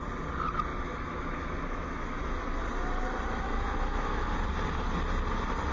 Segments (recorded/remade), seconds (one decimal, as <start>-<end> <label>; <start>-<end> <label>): 0.0-0.7 recorded; 0.7-2.6 remade; 2.6-3.3 recorded; 3.3-4.3 remade; 4.3-5.7 recorded